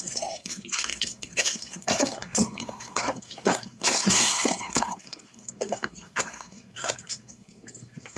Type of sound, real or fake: fake